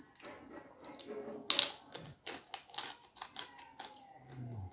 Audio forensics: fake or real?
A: real